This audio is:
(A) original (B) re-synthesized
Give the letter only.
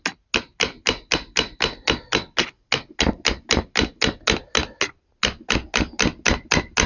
A